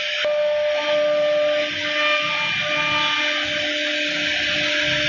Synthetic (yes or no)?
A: no